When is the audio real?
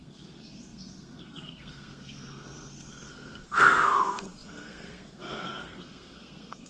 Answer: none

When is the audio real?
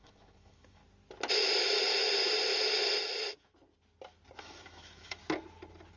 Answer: 0.8-4.4; 5.2-6.0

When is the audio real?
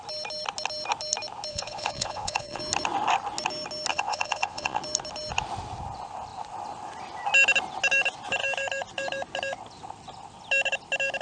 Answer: 0.0-1.5; 2.6-3.9; 4.8-11.2